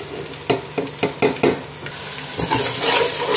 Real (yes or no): yes